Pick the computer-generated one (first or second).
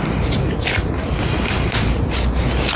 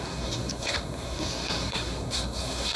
second